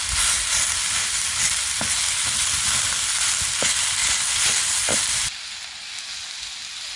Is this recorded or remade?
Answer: recorded